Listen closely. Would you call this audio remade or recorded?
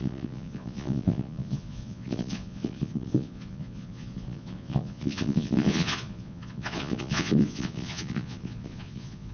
remade